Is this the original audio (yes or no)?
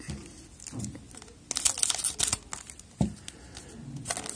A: yes